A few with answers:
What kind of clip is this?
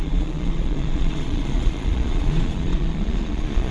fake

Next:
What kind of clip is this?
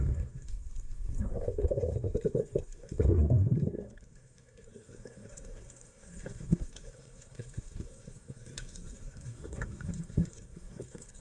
fake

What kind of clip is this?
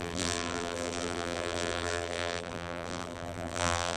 fake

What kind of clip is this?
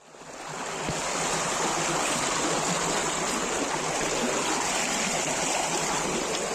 real